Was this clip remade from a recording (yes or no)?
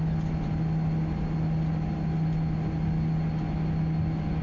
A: no